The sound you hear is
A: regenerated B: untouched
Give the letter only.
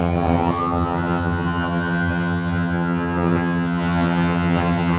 A